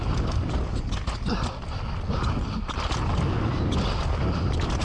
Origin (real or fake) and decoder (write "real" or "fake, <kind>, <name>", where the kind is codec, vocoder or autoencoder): real